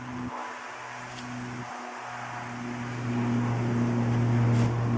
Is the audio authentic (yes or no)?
yes